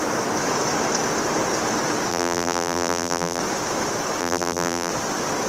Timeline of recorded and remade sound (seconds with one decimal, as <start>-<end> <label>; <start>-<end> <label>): 0.0-2.1 recorded; 2.1-3.4 remade; 3.4-4.2 recorded; 4.2-4.9 remade; 4.9-5.5 recorded